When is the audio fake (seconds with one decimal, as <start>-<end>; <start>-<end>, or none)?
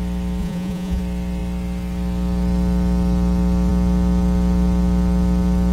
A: 0.4-1.0